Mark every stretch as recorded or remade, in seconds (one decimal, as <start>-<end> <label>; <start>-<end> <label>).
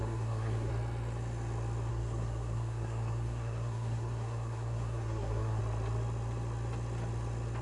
0.0-0.7 remade; 0.7-1.9 recorded; 1.9-5.6 remade; 5.6-7.6 recorded